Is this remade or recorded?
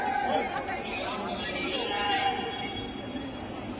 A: recorded